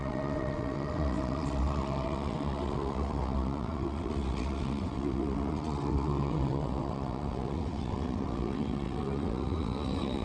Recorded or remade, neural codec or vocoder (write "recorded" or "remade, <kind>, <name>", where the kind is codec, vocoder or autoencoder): remade, vocoder, WaveNeXt